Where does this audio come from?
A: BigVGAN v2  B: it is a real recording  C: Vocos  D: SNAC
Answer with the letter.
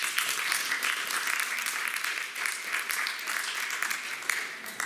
B